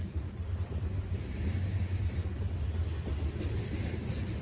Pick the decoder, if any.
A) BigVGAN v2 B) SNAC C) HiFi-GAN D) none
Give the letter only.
A